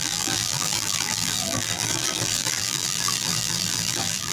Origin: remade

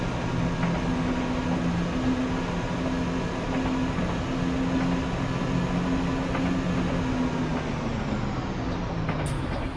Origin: recorded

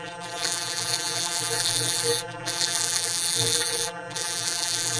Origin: remade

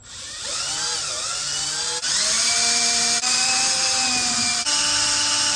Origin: remade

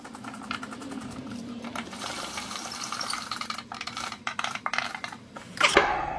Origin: remade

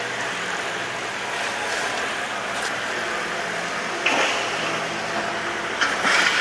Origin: recorded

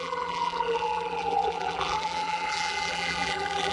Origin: remade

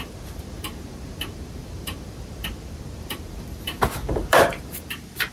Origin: remade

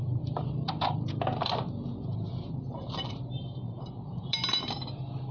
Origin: remade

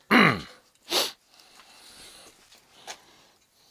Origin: recorded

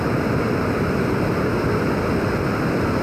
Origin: recorded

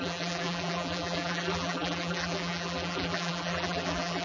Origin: remade